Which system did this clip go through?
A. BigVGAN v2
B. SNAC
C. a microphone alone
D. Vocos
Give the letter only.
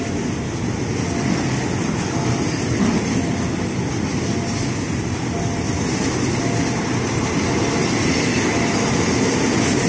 C